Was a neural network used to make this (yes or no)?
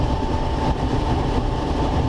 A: yes